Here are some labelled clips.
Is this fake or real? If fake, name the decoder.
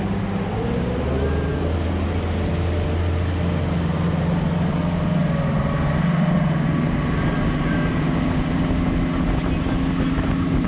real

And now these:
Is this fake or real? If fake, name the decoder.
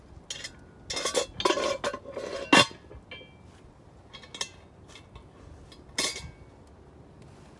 real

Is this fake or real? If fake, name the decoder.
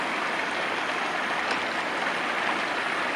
real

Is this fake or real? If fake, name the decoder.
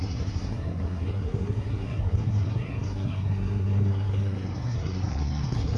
fake, codec, SNAC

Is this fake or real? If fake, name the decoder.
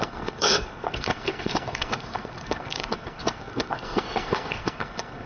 fake, codec, SNAC